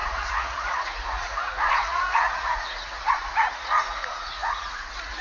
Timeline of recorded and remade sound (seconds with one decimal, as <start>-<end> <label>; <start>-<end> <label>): 0.0-5.2 remade